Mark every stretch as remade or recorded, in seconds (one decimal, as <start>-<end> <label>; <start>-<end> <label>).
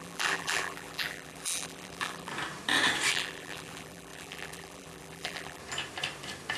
0.0-2.3 remade; 2.3-3.1 recorded; 3.1-5.6 remade; 5.6-6.6 recorded